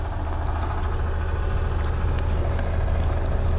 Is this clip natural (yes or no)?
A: yes